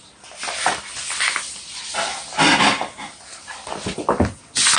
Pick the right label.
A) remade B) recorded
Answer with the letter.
B